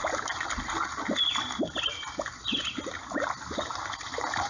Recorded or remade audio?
remade